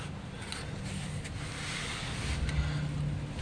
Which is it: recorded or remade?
recorded